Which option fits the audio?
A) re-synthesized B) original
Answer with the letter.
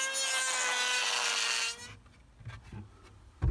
B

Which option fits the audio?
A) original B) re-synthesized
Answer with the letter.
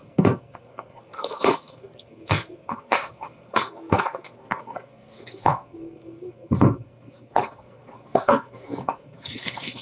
B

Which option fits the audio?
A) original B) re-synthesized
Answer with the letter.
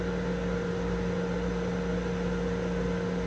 A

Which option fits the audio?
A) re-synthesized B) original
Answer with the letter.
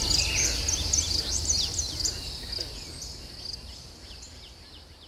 B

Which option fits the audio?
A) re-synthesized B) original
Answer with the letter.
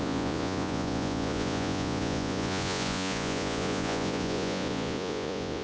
A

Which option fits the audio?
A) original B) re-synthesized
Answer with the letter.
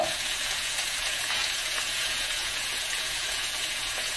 B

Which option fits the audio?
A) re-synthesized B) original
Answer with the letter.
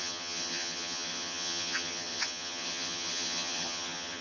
A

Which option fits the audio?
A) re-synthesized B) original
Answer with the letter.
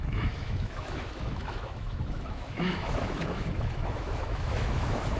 A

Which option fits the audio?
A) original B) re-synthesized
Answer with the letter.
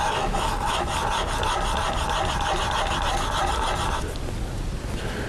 A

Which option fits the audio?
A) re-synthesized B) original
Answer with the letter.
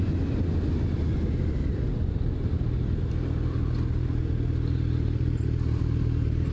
B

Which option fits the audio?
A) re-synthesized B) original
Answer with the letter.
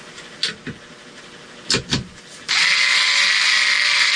B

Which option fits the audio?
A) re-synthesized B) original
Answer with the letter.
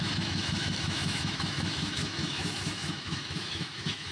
A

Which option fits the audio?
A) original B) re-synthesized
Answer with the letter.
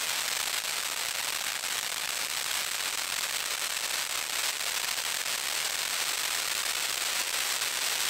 A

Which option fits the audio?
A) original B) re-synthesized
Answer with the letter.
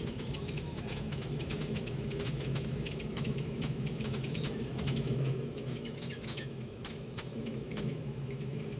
B